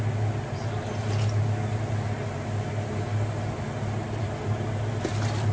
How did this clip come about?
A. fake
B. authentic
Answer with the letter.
B